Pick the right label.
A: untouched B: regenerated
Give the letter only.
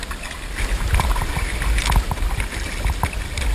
A